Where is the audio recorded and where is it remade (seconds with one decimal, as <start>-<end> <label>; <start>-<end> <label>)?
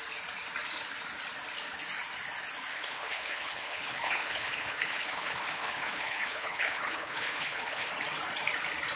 0.0-2.7 recorded; 2.7-7.9 remade; 7.9-9.0 recorded